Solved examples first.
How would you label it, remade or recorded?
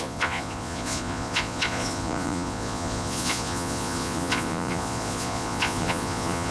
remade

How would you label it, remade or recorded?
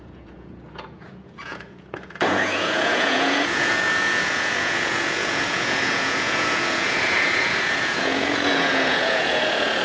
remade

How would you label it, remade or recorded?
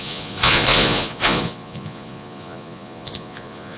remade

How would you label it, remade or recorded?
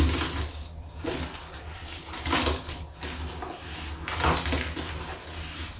recorded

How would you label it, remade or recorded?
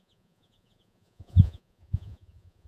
remade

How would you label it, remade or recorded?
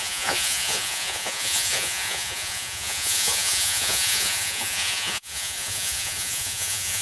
remade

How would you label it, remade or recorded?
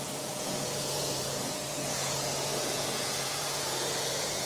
remade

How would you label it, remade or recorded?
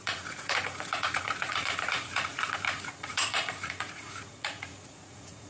remade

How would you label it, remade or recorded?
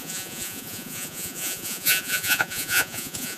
remade